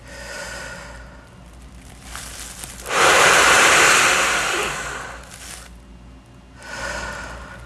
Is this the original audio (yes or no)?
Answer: yes